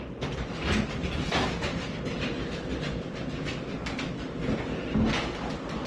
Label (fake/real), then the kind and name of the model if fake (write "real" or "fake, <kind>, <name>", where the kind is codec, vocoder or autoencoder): real